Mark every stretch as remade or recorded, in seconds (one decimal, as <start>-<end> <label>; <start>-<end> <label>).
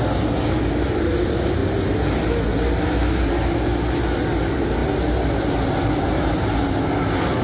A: 0.0-7.4 recorded